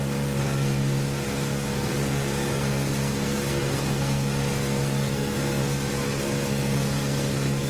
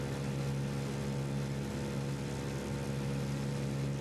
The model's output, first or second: first